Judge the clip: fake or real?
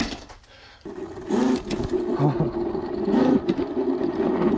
real